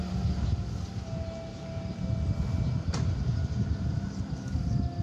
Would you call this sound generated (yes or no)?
no